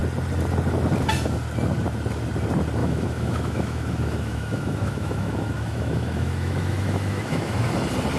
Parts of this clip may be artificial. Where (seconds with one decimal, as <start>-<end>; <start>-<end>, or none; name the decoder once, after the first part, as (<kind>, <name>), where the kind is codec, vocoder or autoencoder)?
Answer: 2.8-7.7 (autoencoder, DAC-VAE)